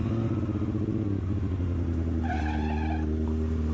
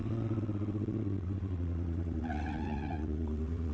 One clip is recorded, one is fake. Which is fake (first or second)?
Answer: second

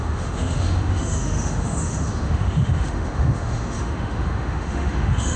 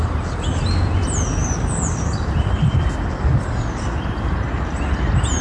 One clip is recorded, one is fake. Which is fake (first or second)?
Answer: first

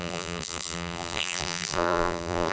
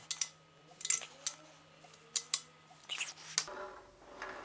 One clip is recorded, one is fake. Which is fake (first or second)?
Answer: first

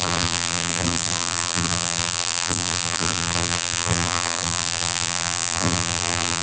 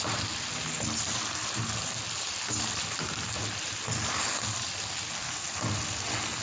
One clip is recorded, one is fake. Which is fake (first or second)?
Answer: first